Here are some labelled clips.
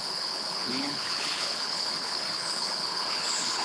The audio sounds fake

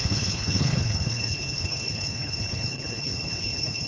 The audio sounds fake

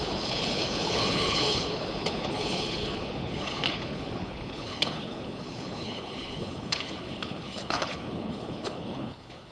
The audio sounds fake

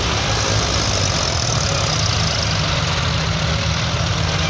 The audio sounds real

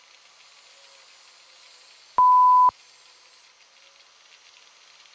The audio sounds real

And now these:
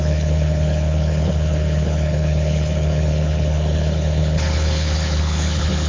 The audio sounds fake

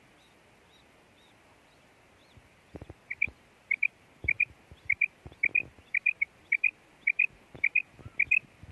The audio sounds real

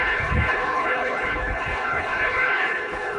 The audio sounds fake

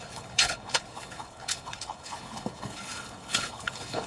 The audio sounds fake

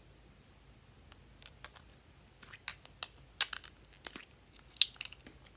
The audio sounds real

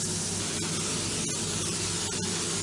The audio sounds real